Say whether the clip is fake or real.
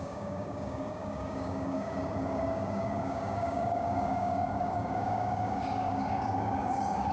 fake